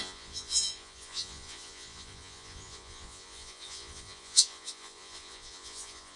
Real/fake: fake